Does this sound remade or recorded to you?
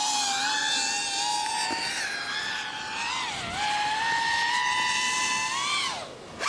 recorded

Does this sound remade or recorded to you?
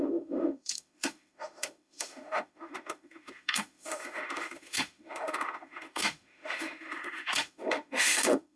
remade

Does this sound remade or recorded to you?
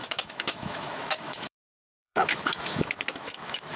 remade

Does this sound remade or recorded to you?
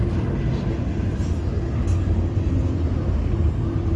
recorded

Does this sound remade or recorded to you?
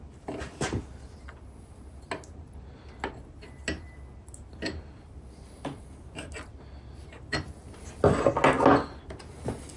recorded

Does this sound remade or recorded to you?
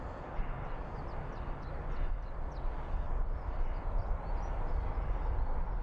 recorded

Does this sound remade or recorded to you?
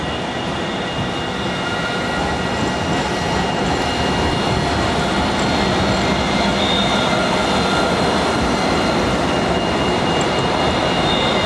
recorded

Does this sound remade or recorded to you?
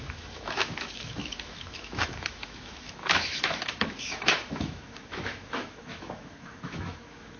remade